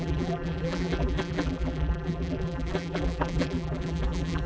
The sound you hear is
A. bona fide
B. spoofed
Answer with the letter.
B